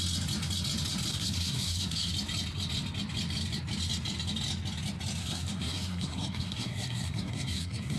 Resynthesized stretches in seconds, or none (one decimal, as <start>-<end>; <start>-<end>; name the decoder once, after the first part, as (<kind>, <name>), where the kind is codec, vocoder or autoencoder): 1.1-2.1 (codec, SNAC); 5.2-8.0